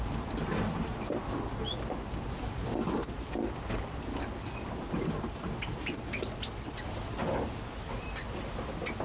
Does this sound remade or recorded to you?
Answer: recorded